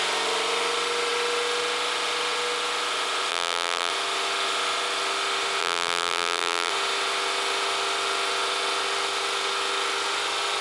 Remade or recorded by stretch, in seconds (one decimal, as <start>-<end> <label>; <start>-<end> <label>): 0.0-3.3 recorded; 3.3-3.9 remade; 3.9-5.6 recorded; 5.6-6.7 remade; 6.7-10.6 recorded